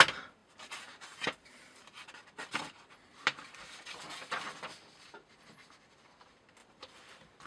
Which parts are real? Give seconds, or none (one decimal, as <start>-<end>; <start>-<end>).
0.0-0.4; 2.1-6.6